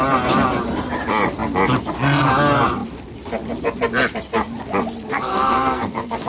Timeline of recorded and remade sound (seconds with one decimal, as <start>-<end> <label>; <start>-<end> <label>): 0.0-5.1 recorded; 5.1-6.3 remade